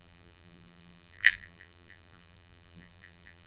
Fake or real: fake